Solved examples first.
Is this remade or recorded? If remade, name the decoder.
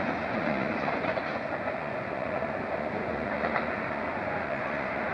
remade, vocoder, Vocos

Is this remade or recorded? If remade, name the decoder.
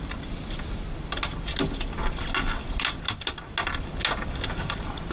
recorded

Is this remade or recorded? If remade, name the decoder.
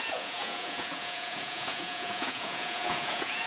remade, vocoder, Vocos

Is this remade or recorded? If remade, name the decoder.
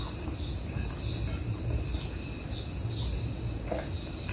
recorded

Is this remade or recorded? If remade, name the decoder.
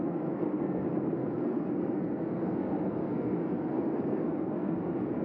remade, codec, SNAC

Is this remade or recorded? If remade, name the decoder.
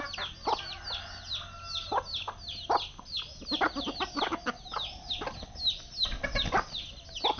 recorded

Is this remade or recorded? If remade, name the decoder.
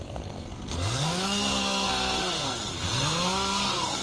remade, codec, SNAC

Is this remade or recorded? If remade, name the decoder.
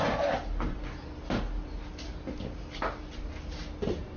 recorded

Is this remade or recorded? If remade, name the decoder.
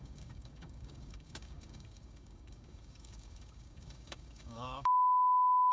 remade, codec, DAC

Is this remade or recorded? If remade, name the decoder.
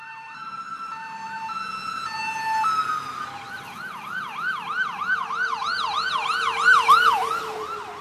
recorded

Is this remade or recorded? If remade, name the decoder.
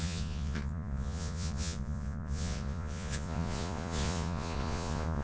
remade, vocoder, Vocos